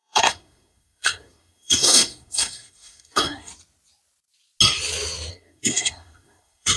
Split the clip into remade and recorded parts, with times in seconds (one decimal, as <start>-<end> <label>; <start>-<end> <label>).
0.0-3.5 remade; 3.5-5.3 recorded; 5.3-6.8 remade